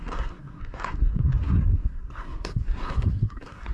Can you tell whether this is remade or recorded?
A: remade